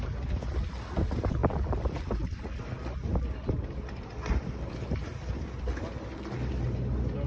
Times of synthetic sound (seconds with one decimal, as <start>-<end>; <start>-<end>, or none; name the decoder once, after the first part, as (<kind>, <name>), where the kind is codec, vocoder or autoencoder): 1.4-5.8 (vocoder, BigVGAN v2)